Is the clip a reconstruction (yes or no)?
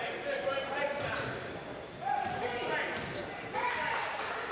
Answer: no